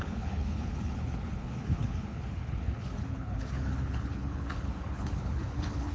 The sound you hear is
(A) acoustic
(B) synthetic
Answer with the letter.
B